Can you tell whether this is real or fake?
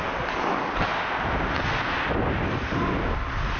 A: real